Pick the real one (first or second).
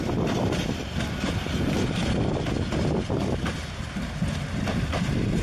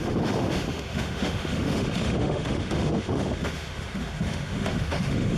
first